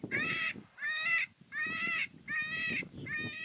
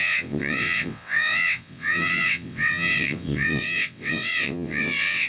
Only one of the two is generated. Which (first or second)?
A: second